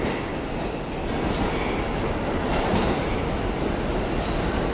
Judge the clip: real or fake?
real